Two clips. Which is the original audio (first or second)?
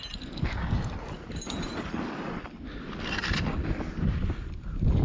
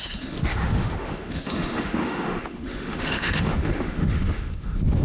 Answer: first